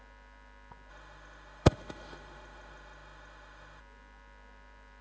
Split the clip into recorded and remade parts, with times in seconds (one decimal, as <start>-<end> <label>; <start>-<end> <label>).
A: 0.0-0.9 recorded; 0.9-3.8 remade; 3.8-5.0 recorded